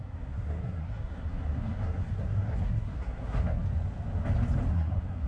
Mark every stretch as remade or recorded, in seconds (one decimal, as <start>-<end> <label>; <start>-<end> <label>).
0.0-3.6 remade; 3.6-4.7 recorded; 4.7-5.3 remade